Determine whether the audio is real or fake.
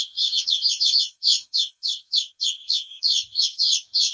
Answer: fake